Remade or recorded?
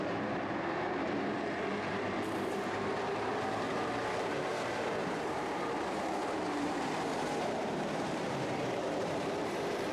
remade